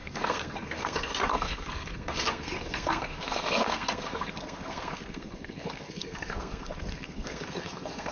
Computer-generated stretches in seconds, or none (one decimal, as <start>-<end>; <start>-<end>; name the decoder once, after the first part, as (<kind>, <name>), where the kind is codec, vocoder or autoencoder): 0.0-8.1 (codec, SNAC)